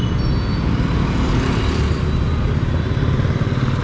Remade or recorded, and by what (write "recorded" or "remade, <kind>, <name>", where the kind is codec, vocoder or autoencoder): recorded